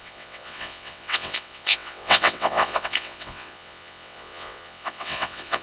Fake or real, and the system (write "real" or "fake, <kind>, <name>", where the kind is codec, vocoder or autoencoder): fake, vocoder, WaveNeXt